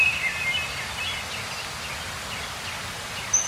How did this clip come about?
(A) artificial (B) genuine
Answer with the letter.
B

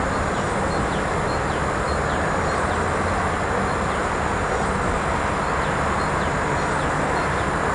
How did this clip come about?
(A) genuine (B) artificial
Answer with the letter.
A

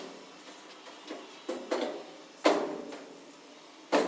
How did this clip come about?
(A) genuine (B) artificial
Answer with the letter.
A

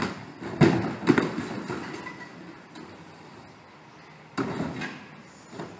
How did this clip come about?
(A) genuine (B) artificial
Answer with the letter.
A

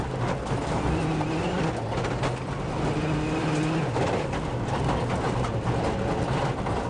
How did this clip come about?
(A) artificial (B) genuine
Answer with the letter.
B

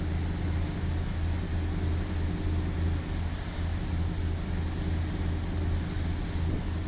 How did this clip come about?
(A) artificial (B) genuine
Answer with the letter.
B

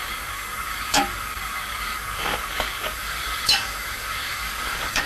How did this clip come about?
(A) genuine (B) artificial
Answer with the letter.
B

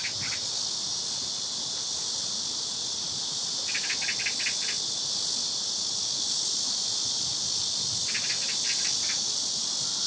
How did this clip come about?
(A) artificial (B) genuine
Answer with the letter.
B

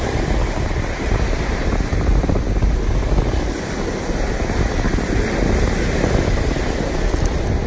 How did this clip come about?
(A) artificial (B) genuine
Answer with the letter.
B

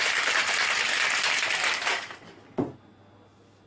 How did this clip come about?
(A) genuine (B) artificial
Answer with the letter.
A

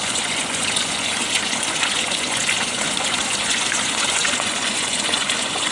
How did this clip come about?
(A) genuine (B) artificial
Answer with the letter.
B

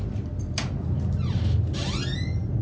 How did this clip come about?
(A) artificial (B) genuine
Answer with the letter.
B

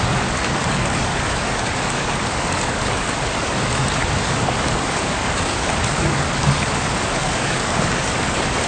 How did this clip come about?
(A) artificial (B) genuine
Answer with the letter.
A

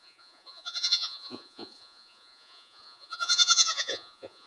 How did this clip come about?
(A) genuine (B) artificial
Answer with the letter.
B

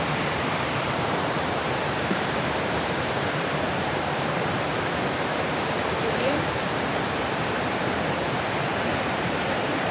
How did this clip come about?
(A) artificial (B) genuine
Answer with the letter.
A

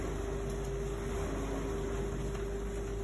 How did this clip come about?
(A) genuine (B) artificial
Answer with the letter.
A